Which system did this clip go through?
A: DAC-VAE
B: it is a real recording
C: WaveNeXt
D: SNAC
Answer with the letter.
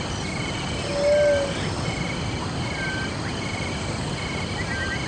B